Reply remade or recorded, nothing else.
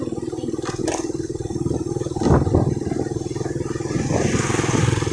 recorded